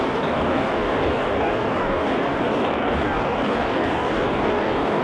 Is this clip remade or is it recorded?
remade